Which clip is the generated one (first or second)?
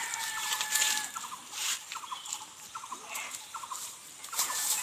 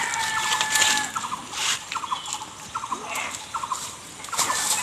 first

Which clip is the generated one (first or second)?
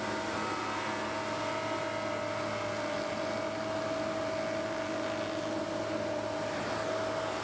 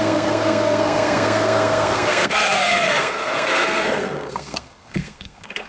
second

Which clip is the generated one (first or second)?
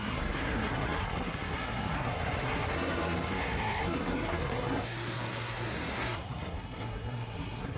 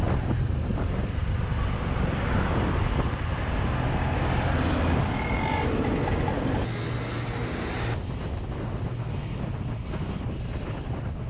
first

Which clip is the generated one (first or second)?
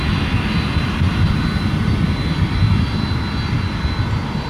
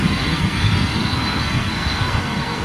second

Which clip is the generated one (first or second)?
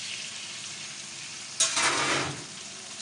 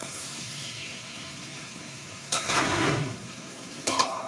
second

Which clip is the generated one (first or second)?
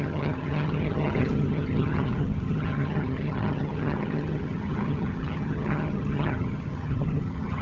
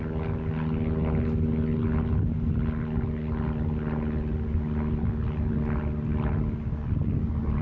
first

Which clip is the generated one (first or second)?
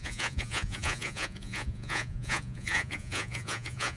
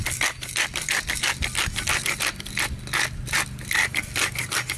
first